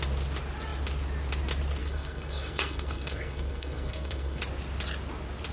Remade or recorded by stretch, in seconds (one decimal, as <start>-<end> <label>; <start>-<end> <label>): 0.0-1.8 recorded; 1.8-4.4 remade; 4.4-5.5 recorded